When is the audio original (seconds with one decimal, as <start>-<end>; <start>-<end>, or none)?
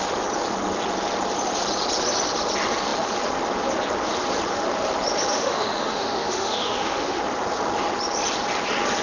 0.0-5.3; 7.2-9.0